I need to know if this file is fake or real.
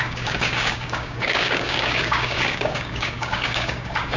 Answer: fake